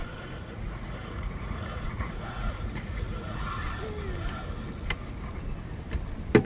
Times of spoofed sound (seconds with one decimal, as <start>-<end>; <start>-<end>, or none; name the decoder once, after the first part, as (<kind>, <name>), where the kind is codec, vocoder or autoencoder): 0.0-3.6 (vocoder, Vocos)